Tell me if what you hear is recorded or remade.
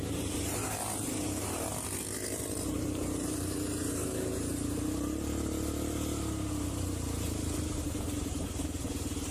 remade